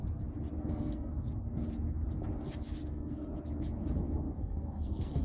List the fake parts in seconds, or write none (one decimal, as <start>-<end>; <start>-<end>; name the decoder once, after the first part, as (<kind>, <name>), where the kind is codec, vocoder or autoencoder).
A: 0.6-1.1 (codec, SNAC); 2.9-3.3; 4.4-5.2